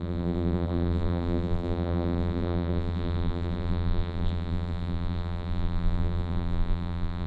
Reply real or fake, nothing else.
fake